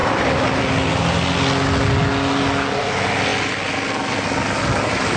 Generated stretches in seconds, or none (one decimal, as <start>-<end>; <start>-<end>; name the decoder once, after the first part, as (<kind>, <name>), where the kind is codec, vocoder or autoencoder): none